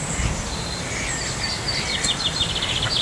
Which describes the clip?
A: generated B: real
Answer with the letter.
B